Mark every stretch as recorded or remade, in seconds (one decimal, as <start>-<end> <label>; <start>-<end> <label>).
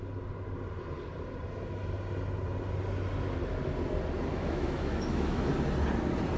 0.0-4.3 recorded; 4.3-5.5 remade; 5.5-6.4 recorded